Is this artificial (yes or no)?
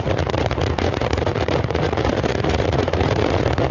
yes